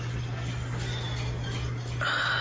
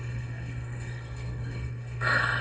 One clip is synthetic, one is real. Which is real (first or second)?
first